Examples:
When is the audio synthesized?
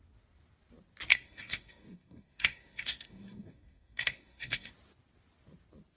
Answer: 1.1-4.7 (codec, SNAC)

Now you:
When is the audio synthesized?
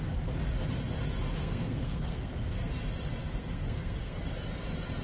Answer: 1.4-2.7 (codec, SNAC); 3.2-4.2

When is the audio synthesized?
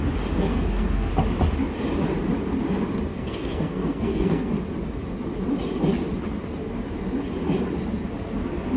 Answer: 0.5-1.1 (codec, SNAC); 3.1-4.5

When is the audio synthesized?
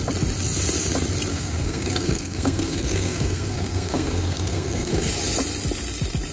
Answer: 1.3-5.1 (codec, SNAC)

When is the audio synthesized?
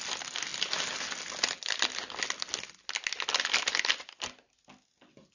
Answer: none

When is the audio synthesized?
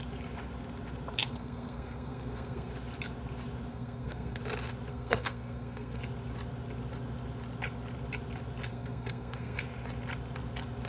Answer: 1.2-2.7 (codec, SNAC); 3.7-4.4; 4.9-6.0; 8.7-9.6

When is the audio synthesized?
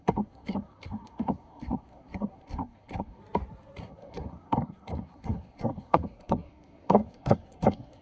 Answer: 0.0-3.2 (codec, SNAC); 3.8-8.0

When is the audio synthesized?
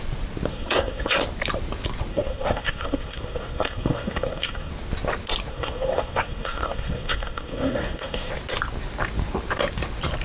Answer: 0.5-1.2 (codec, SNAC); 2.1-4.7; 5.5-8.3